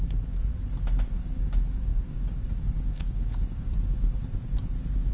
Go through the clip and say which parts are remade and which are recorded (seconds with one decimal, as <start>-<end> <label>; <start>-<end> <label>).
0.0-0.5 remade; 0.5-1.1 recorded; 1.1-3.7 remade; 3.7-5.1 recorded